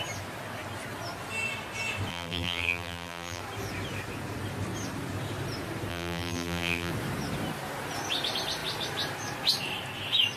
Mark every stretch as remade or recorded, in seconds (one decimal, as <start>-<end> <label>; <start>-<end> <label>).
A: 0.0-2.1 recorded; 2.1-3.4 remade; 3.4-5.9 recorded; 5.9-6.9 remade; 6.9-10.4 recorded